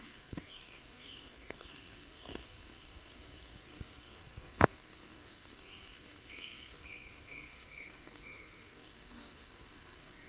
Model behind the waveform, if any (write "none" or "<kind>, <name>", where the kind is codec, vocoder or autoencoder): codec, SNAC